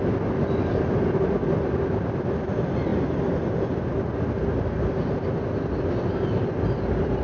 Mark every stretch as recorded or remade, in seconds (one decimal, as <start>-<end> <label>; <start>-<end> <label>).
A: 0.0-7.2 recorded